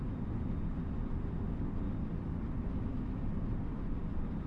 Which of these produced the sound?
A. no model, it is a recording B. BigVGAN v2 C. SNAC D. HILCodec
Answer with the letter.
A